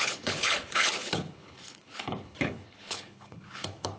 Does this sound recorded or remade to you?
remade